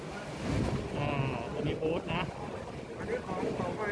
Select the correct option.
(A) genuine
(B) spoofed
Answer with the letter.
A